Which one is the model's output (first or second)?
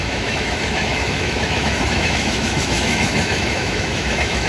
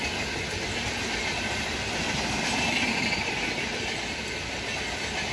first